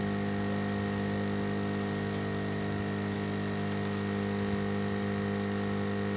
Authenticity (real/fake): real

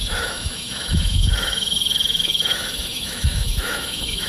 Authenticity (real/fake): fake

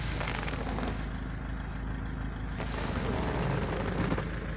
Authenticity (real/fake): real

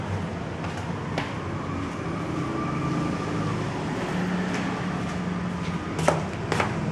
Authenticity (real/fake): real